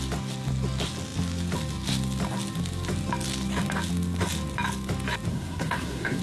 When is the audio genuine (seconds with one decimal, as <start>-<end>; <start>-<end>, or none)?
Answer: 0.0-5.3